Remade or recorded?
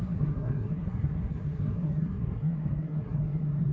remade